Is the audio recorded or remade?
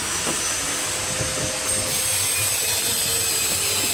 recorded